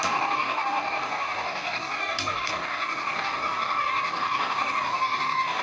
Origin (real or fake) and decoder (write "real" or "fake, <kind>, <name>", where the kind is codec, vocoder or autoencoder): fake, codec, DAC